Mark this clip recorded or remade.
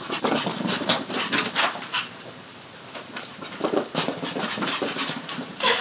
remade